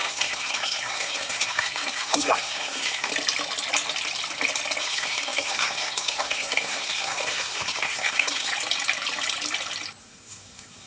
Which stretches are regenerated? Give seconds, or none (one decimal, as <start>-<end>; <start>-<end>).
0.0-3.1; 4.8-8.5; 10.0-10.9